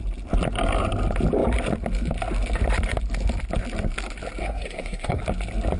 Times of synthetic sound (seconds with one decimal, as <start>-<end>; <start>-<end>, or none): 4.4-5.2